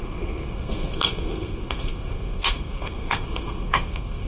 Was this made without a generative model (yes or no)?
no